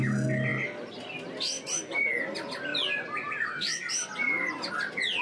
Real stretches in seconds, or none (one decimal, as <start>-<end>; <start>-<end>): 0.0-5.2